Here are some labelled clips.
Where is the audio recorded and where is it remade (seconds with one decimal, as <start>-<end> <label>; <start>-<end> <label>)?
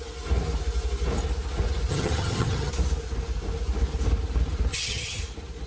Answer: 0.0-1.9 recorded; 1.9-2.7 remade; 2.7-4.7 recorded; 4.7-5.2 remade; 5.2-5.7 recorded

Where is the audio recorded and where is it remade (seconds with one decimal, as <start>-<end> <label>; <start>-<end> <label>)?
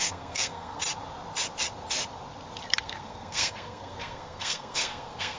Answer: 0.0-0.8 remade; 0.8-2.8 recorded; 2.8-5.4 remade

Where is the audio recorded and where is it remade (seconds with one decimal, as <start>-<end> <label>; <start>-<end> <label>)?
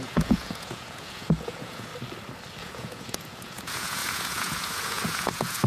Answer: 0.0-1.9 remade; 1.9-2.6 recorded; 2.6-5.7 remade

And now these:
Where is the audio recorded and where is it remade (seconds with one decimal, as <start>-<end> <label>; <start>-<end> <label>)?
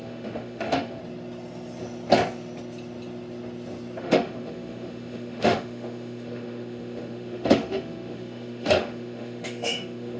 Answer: 0.0-1.0 remade; 1.0-4.0 recorded; 4.0-10.2 remade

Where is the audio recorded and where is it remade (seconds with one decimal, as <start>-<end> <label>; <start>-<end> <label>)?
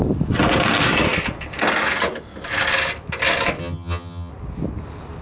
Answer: 0.0-3.6 recorded; 3.6-4.3 remade; 4.3-5.2 recorded